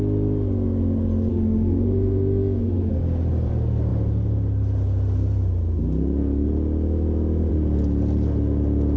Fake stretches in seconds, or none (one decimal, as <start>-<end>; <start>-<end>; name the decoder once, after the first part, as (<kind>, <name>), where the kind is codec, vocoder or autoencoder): 1.3-2.9 (autoencoder, DAC-VAE)